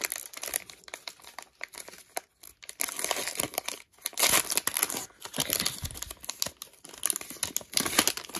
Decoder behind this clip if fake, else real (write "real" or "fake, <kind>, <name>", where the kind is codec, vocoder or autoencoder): real